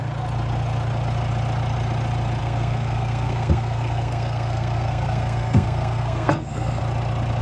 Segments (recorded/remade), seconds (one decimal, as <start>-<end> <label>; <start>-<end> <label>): 0.0-2.4 recorded; 2.4-6.8 remade; 6.8-7.4 recorded